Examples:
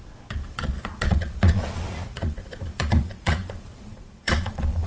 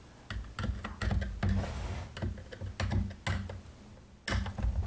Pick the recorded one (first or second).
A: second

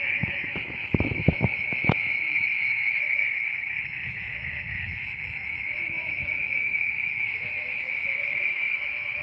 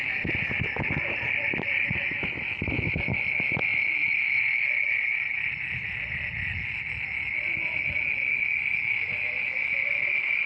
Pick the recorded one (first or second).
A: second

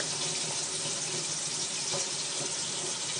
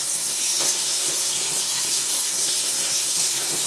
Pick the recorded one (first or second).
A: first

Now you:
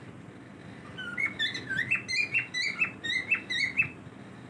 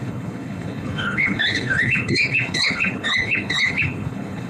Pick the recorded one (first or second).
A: first